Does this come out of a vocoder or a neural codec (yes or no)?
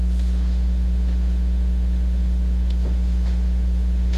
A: yes